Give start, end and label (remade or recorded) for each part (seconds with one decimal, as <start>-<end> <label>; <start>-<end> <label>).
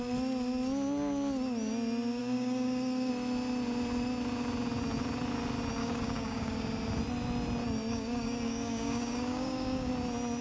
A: 0.0-2.2 recorded; 2.2-3.1 remade; 3.1-5.8 recorded; 5.8-6.6 remade; 6.6-7.9 recorded; 7.9-9.9 remade; 9.9-10.4 recorded